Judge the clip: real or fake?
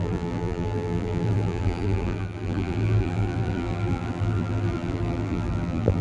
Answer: fake